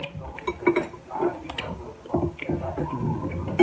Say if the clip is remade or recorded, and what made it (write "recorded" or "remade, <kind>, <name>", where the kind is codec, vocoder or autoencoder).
recorded